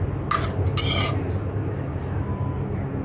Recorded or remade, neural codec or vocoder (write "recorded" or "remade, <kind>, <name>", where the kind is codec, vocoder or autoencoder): recorded